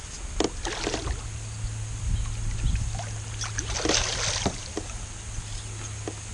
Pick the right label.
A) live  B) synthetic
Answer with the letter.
A